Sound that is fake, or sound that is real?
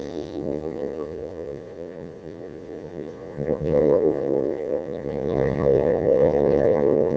fake